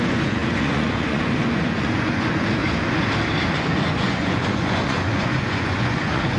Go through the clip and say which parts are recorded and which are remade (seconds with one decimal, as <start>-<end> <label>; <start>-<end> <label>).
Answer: 0.0-2.6 remade; 2.6-3.5 recorded; 3.5-6.4 remade